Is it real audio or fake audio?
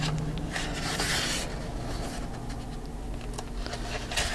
real